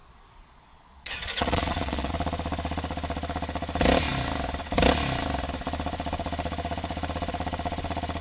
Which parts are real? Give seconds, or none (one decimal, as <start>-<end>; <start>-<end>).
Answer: 2.1-8.2